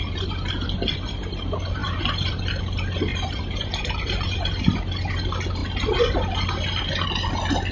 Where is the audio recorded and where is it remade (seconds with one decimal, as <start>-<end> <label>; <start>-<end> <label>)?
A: 0.0-1.8 recorded; 1.8-2.6 remade; 2.6-3.1 recorded; 3.1-4.4 remade; 4.4-7.7 recorded